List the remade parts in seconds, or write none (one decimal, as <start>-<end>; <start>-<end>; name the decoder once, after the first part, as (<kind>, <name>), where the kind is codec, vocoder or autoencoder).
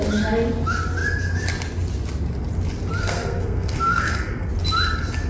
3.0-4.5 (codec, SNAC)